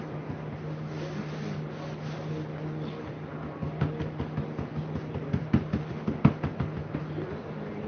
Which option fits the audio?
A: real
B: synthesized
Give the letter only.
A